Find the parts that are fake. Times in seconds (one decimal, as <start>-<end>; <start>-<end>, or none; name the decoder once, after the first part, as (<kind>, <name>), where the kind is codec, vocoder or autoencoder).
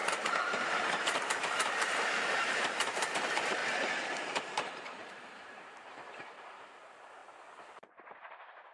0.0-3.6 (vocoder, BigVGAN v2); 4.2-7.2; 7.7-8.7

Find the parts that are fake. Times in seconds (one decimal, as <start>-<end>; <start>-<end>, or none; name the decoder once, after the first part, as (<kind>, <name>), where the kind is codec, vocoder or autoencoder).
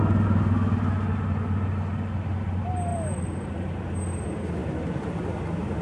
2.9-3.7 (vocoder, BigVGAN v2)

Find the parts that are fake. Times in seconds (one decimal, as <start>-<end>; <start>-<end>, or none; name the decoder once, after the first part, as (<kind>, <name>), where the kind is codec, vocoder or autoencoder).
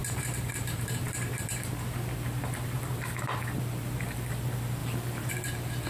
0.0-1.5 (vocoder, BigVGAN v2)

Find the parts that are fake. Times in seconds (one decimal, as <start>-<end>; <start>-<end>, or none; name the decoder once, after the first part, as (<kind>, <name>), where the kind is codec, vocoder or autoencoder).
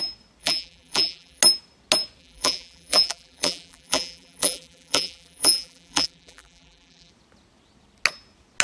0.4-1.4 (vocoder, BigVGAN v2); 2.2-7.1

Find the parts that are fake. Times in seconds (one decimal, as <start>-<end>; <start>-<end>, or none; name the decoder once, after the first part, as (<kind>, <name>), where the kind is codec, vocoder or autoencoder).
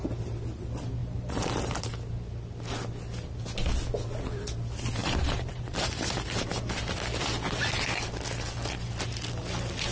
1.0-1.9 (vocoder, BigVGAN v2); 5.0-6.3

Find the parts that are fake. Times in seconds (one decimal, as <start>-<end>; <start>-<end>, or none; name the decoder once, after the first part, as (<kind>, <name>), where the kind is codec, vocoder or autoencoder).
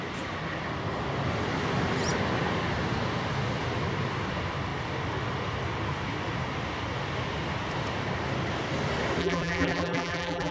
9.2-10.5 (vocoder, BigVGAN v2)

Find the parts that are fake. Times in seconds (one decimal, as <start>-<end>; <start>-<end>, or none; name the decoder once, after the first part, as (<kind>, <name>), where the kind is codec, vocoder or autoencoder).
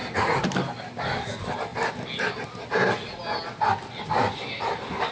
0.0-0.5 (vocoder, BigVGAN v2)